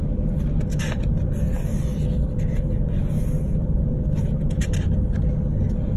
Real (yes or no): yes